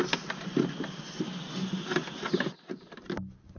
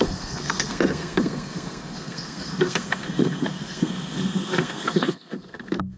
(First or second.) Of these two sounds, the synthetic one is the second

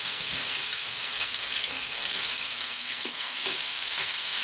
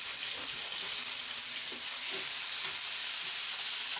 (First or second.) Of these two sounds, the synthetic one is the first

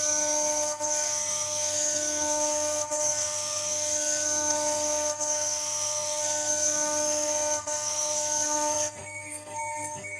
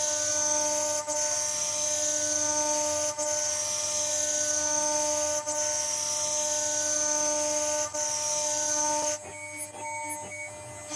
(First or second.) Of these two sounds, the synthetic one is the first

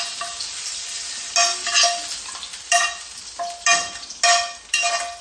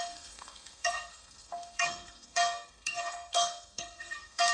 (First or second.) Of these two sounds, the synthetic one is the second